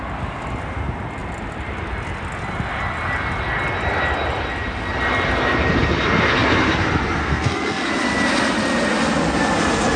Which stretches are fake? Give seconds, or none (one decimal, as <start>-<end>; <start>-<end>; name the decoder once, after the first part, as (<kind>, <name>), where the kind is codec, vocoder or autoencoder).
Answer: 7.2-7.9 (codec, SNAC)